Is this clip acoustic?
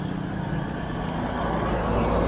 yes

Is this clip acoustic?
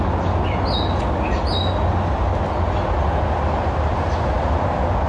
yes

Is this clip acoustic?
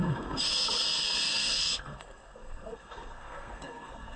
no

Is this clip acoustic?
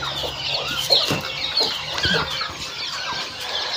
yes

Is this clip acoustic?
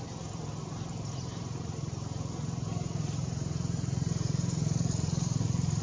yes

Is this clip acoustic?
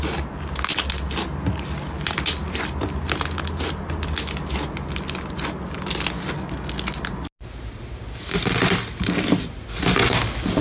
yes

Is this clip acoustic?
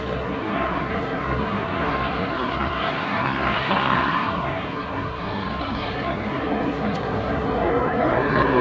no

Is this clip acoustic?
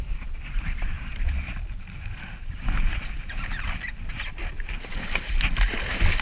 yes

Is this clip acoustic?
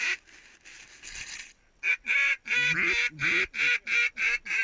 yes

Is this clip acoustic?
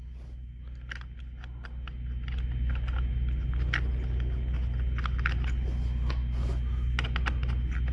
yes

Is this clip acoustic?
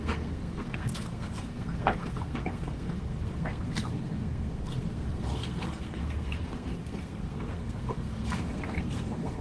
no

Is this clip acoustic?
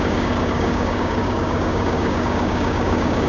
no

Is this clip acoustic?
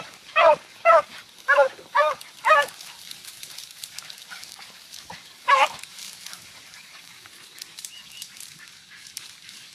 no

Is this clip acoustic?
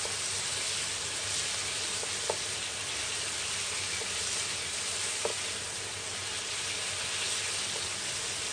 yes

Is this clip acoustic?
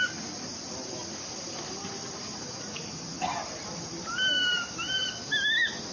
yes